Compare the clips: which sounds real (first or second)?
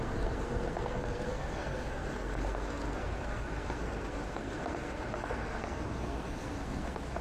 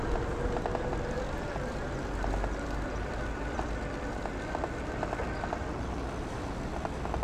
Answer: second